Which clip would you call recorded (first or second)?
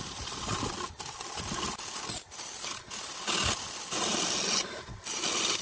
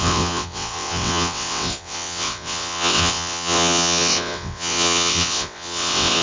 first